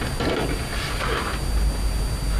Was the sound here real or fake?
real